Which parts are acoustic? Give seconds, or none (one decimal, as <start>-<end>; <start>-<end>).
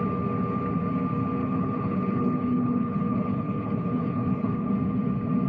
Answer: 0.0-1.4; 4.7-5.5